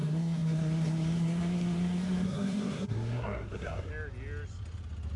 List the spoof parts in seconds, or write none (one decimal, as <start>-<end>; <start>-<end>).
0.0-3.9